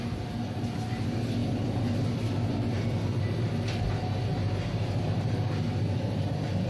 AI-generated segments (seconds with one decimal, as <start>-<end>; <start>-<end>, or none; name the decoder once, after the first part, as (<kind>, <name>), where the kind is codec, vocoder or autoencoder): none